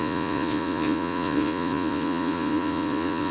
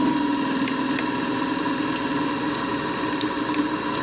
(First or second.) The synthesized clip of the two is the first